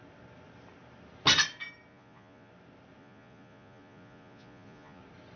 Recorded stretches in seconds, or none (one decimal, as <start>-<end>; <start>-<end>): 0.0-1.9; 2.5-3.0; 5.0-5.4

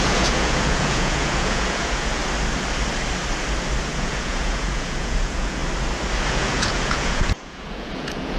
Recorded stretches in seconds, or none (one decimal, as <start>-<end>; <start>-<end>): 2.2-3.9; 5.6-6.3

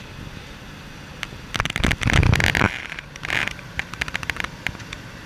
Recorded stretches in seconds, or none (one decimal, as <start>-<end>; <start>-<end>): 0.0-5.3

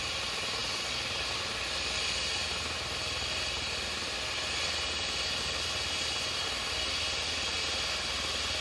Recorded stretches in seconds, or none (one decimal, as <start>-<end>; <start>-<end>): 0.0-8.6